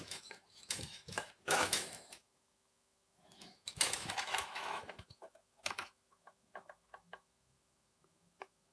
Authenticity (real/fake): fake